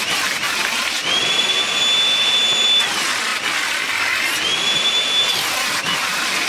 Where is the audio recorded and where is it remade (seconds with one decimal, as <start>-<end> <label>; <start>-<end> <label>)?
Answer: 0.0-6.5 recorded